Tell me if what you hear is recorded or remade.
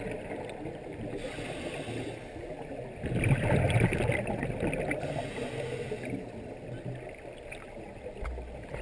recorded